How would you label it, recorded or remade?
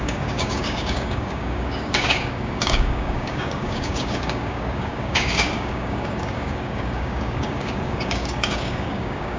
remade